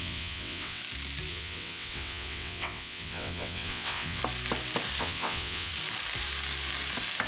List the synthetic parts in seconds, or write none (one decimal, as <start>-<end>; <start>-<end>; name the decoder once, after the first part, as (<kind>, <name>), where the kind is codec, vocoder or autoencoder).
0.0-0.8 (vocoder, WaveNeXt); 1.3-4.2; 5.0-5.7